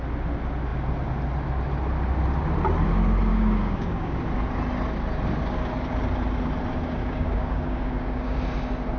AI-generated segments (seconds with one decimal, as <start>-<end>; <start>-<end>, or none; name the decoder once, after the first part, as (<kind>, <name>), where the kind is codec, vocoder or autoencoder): 3.3-4.2 (codec, DAC); 7.0-8.4